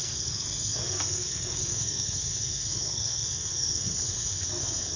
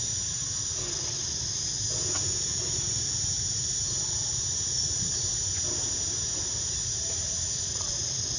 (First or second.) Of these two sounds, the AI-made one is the first